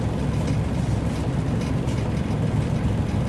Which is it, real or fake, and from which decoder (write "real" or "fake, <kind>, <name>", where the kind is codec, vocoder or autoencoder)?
real